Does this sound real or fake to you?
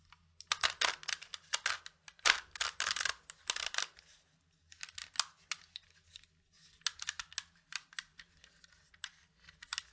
real